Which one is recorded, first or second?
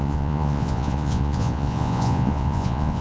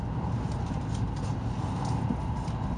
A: second